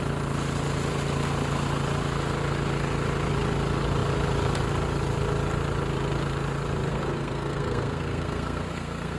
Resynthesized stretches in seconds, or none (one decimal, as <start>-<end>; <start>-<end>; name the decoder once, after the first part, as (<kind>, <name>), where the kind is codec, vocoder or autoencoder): 6.9-9.2 (codec, SNAC)